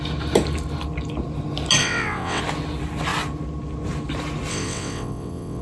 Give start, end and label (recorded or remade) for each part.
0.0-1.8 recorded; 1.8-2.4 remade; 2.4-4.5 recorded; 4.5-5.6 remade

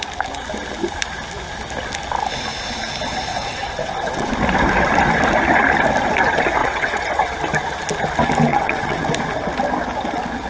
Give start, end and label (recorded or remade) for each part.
0.0-3.3 recorded; 3.3-4.3 remade; 4.3-6.6 recorded; 6.6-7.3 remade; 7.3-8.5 recorded; 8.5-9.0 remade; 9.0-10.5 recorded

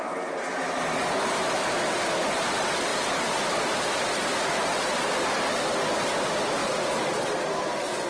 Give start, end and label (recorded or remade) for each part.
0.0-8.1 recorded

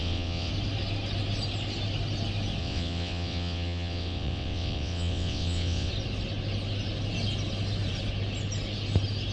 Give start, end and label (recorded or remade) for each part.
0.0-0.5 remade; 0.5-2.6 recorded; 2.6-5.9 remade; 5.9-9.3 recorded